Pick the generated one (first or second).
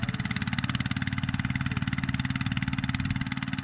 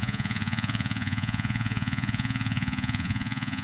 second